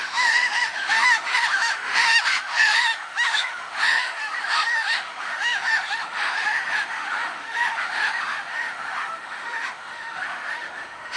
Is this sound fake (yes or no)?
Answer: yes